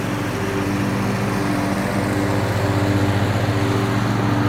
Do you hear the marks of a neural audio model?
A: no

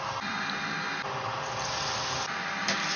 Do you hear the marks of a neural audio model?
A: no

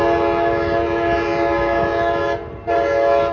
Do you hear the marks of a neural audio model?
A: no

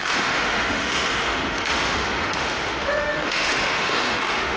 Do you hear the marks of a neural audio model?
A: yes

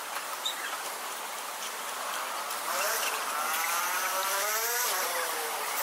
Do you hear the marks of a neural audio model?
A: yes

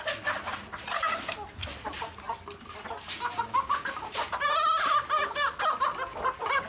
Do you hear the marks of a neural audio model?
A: no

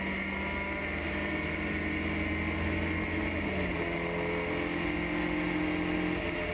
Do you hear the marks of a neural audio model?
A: no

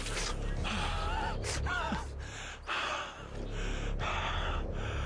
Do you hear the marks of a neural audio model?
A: no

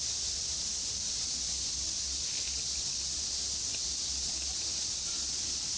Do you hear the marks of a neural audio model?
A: no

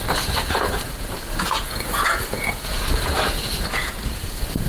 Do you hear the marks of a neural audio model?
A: yes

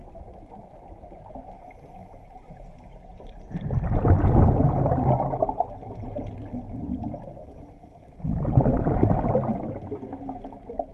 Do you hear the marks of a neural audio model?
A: no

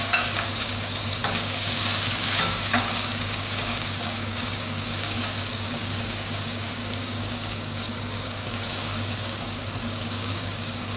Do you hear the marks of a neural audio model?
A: yes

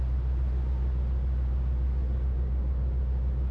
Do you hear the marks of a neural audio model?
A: no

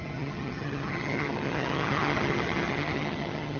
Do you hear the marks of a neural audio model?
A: yes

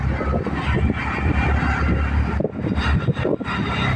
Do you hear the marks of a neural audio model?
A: no